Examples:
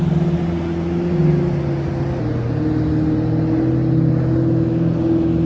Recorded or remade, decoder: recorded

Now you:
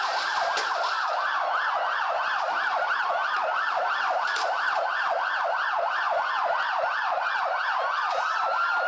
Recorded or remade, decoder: recorded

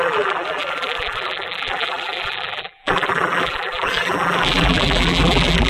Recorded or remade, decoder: remade, vocoder, BigVGAN v2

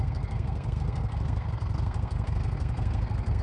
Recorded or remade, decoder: remade, codec, SNAC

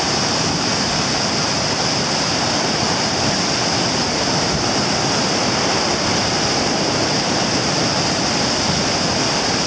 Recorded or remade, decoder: recorded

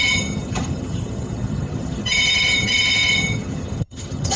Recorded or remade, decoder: remade, vocoder, HiFi-GAN